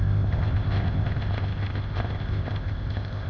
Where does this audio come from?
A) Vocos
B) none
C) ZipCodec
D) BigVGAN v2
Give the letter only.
C